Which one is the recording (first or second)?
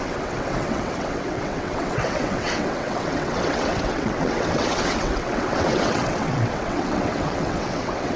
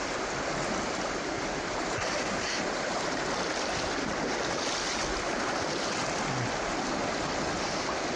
second